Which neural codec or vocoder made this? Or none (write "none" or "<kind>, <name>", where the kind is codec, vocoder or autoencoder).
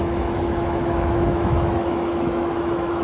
autoencoder, DAC-VAE